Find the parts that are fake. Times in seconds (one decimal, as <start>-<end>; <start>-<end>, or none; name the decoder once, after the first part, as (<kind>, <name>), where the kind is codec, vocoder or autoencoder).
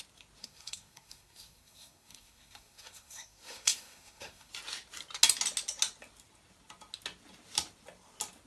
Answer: 0.4-4.5 (codec, SNAC)